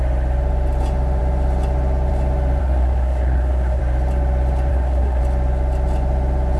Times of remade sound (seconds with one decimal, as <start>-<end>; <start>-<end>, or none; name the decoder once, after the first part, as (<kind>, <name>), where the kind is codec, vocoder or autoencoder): 2.6-3.8 (codec, SNAC); 4.7-5.2